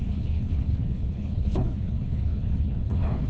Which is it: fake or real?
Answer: fake